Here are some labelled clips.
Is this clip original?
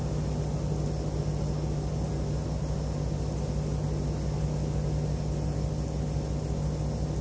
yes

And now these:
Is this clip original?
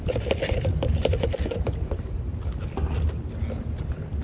yes